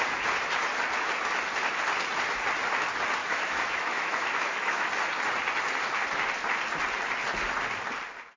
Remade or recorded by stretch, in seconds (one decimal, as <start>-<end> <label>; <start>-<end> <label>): 0.0-3.2 recorded; 3.2-4.9 remade; 4.9-8.4 recorded